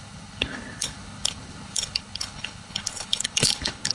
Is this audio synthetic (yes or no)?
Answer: yes